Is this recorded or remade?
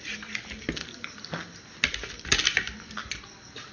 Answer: recorded